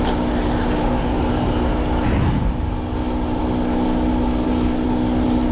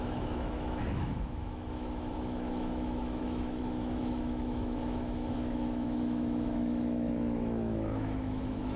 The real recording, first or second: first